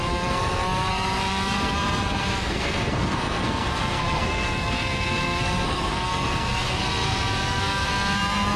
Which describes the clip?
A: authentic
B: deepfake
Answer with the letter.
B